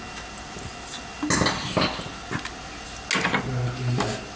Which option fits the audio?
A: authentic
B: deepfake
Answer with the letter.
A